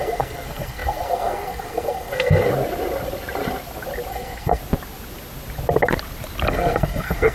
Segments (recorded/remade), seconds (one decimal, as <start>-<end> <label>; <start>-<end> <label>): 0.0-2.5 remade; 2.5-4.1 recorded; 4.1-4.6 remade; 4.6-6.5 recorded; 6.5-7.3 remade